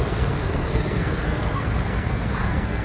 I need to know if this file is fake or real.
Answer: fake